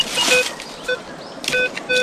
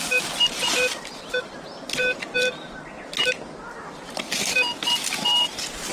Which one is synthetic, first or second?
second